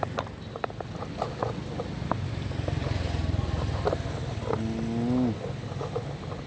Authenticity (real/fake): real